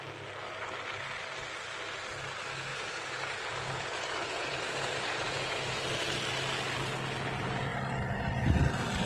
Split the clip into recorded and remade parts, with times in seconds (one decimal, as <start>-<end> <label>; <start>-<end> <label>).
0.0-2.7 recorded; 2.7-5.8 remade; 5.8-9.1 recorded